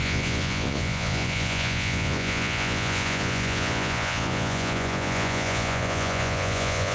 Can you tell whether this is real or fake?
fake